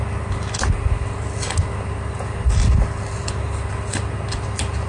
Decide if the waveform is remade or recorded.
recorded